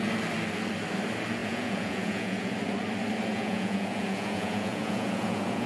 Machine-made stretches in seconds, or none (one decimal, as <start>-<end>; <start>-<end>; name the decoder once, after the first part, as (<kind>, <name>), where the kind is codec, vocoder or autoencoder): 1.4-2.5 (vocoder, Vocos); 3.3-5.7